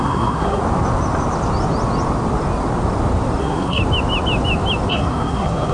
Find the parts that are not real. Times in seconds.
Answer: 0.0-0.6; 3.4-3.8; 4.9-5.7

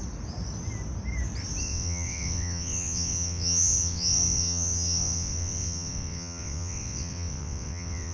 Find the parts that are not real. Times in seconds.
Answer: 1.6-8.1

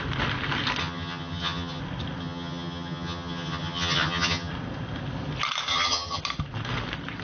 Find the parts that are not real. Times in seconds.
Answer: 0.8-1.8; 2.2-4.5; 5.7-6.2

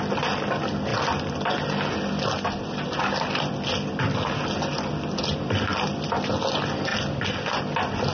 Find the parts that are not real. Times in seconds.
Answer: none